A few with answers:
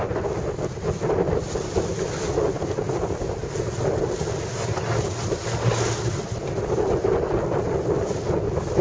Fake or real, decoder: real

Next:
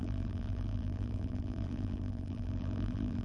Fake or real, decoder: fake, vocoder, BigVGAN v2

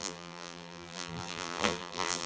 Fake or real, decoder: fake, vocoder, BigVGAN v2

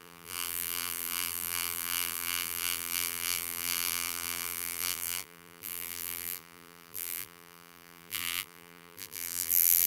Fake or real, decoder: fake, vocoder, BigVGAN v2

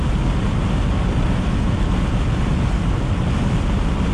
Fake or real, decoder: real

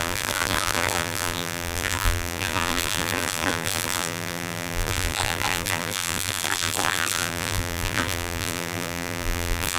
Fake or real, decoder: fake, vocoder, BigVGAN v2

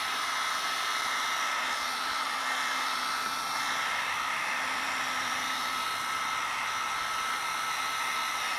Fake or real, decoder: real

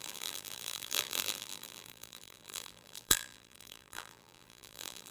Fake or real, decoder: fake, vocoder, BigVGAN v2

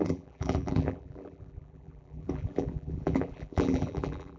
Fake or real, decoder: fake, vocoder, BigVGAN v2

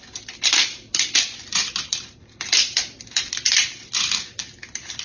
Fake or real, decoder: fake, vocoder, BigVGAN v2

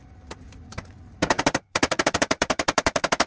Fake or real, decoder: fake, vocoder, BigVGAN v2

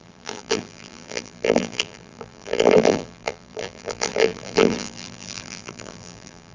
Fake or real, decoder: fake, vocoder, BigVGAN v2